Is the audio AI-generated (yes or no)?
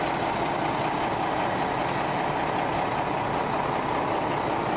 no